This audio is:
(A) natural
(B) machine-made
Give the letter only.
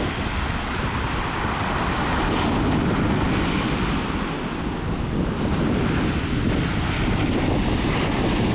A